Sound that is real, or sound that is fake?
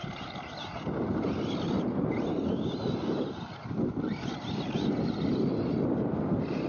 real